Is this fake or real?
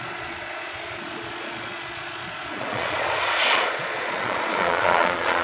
fake